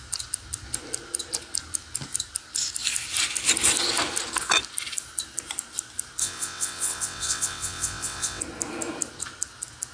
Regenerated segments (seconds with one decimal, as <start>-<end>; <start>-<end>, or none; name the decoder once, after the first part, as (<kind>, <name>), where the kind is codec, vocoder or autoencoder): 6.2-8.4 (vocoder, WaveNeXt)